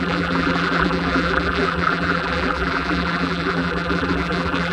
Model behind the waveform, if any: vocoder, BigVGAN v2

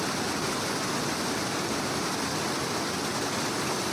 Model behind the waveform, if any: none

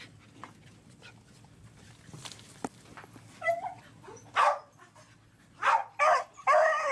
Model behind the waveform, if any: vocoder, BigVGAN v2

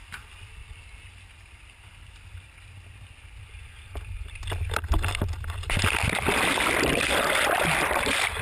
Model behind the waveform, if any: vocoder, BigVGAN v2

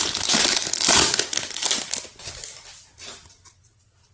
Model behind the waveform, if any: none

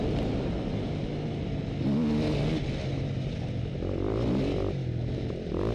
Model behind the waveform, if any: none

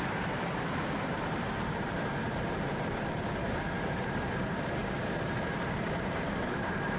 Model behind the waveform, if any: vocoder, BigVGAN v2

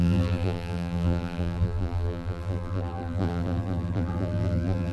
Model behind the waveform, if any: vocoder, BigVGAN v2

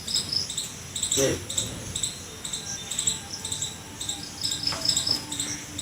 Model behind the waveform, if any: none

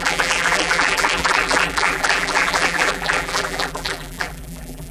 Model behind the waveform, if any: vocoder, BigVGAN v2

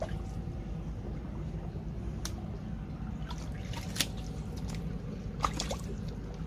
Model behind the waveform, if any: none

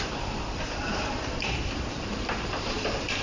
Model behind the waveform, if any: vocoder, BigVGAN v2